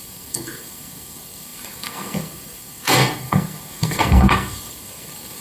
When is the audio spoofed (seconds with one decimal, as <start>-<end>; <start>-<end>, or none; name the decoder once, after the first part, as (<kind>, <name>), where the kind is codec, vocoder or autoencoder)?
0.0-5.4 (codec, SNAC)